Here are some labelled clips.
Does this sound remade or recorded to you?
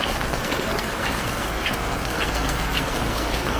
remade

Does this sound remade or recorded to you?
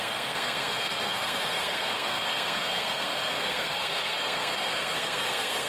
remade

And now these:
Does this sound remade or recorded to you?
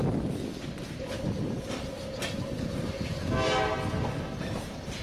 recorded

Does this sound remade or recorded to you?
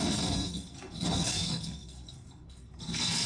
remade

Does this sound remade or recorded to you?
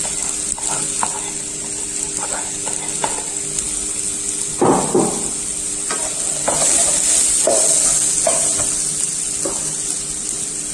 recorded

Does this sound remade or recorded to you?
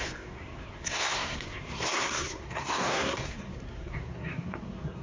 remade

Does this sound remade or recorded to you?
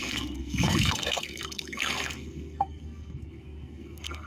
remade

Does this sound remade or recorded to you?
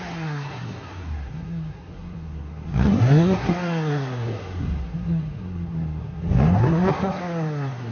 remade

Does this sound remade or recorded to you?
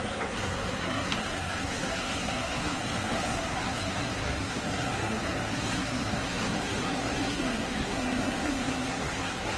remade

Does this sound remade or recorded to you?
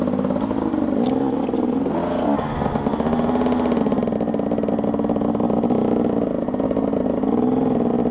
recorded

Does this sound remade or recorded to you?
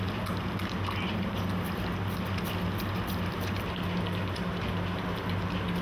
recorded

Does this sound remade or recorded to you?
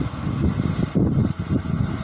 recorded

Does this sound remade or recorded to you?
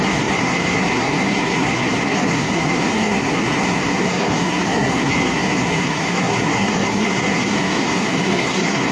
remade